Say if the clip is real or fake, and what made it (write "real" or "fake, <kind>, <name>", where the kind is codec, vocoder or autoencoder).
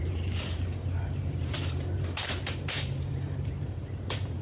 fake, vocoder, BigVGAN v2